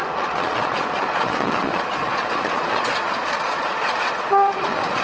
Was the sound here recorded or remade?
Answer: remade